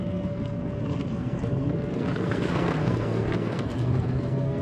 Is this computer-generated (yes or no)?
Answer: yes